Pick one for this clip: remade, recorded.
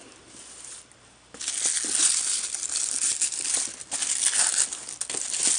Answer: recorded